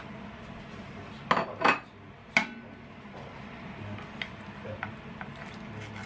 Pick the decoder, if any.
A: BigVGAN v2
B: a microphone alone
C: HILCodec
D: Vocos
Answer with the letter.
B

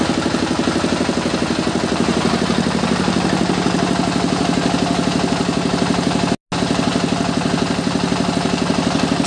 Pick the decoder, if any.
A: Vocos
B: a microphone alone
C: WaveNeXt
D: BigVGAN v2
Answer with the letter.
B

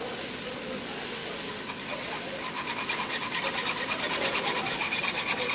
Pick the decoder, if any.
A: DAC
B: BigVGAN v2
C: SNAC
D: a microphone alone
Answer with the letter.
D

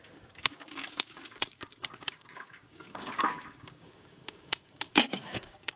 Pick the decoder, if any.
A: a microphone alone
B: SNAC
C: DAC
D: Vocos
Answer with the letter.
C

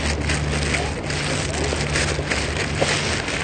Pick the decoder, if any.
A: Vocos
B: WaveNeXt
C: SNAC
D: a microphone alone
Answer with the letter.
D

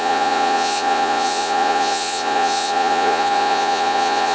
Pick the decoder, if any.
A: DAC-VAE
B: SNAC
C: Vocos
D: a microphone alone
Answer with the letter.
C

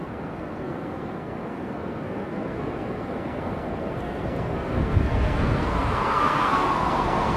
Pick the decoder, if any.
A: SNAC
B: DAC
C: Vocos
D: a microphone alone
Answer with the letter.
A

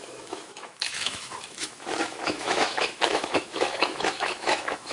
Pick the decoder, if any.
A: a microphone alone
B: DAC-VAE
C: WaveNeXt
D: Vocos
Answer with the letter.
B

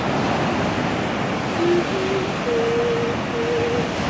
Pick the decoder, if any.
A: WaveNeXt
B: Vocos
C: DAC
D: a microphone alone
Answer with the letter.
D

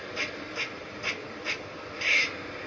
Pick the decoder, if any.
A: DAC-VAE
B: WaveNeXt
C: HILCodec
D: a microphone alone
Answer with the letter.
D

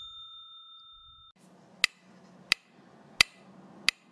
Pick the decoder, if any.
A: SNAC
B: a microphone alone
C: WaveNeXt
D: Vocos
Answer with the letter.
B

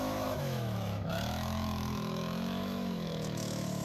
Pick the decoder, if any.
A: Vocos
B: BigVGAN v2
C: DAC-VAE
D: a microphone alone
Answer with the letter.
C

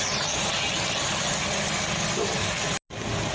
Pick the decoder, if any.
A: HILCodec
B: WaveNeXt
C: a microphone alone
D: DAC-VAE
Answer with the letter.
C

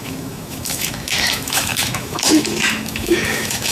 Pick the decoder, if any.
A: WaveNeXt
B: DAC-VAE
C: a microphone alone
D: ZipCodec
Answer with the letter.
B